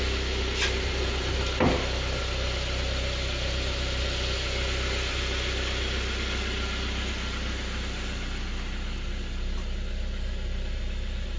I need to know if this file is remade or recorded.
recorded